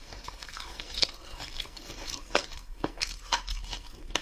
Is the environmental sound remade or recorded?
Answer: remade